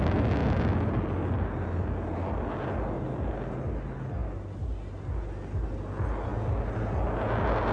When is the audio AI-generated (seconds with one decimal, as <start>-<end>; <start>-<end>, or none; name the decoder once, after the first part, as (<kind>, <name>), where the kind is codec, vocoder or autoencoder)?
none